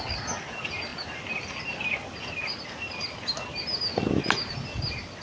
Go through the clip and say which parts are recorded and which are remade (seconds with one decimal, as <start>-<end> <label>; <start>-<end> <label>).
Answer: 0.0-5.2 recorded